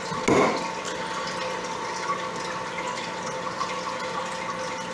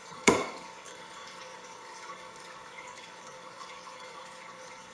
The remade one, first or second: second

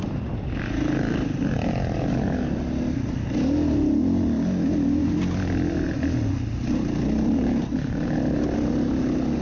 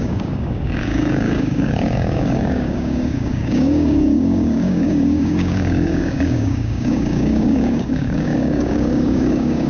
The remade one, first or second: second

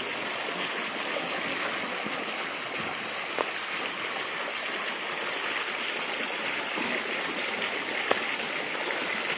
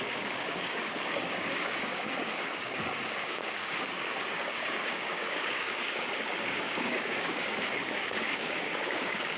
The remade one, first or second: second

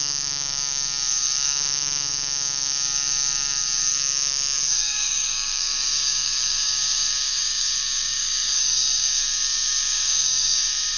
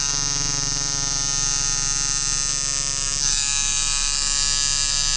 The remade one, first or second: first